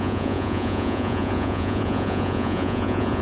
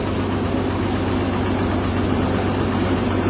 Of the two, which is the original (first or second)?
second